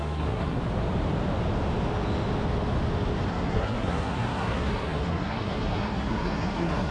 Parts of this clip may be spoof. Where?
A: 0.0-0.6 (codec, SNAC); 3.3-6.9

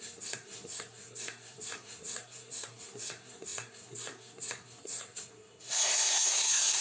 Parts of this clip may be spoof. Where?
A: 0.0-6.8 (codec, SNAC)